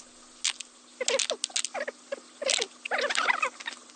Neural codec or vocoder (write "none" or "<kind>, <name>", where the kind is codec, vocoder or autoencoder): none